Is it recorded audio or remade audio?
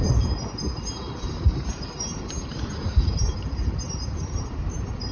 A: remade